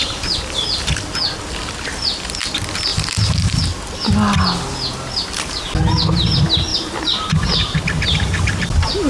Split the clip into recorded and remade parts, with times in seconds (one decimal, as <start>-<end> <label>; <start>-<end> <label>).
0.0-0.9 remade; 0.9-6.7 recorded; 6.7-9.1 remade